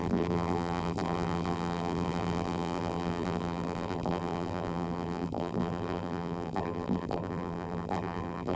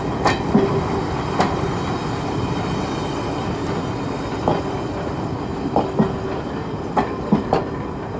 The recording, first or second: second